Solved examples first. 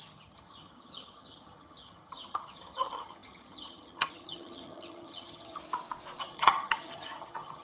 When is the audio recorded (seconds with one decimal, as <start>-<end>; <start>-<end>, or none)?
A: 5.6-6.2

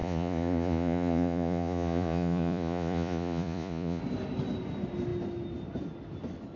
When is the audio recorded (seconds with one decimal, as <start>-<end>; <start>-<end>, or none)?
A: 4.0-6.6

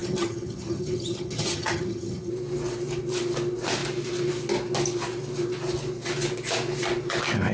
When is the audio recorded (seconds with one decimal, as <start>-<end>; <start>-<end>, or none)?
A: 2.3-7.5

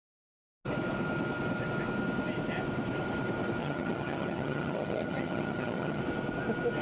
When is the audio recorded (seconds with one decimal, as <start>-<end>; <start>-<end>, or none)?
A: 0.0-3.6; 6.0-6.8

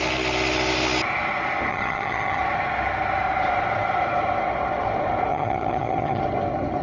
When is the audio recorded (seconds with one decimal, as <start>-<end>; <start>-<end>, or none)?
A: 0.0-1.7; 2.4-5.3; 6.2-6.8